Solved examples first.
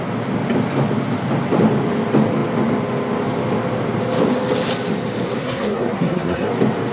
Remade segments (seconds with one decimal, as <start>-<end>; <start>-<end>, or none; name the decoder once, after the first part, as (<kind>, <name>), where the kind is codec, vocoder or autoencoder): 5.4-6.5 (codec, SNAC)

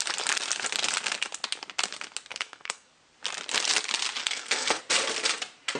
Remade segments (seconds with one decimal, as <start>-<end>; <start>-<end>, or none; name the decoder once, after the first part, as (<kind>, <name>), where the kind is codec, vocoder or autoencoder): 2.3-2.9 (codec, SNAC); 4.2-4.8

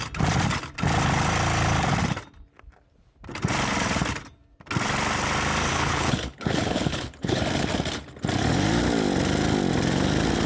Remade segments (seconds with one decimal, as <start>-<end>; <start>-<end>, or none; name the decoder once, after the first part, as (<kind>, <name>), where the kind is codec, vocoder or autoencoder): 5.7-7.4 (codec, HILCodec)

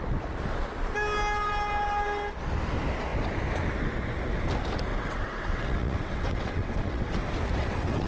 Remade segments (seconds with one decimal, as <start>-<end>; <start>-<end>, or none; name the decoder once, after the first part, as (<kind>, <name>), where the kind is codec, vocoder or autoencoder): 4.9-7.1 (vocoder, WaveNeXt); 7.6-8.1